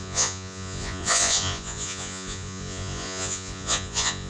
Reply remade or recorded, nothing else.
remade